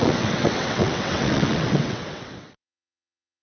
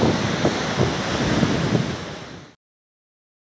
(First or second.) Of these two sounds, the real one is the second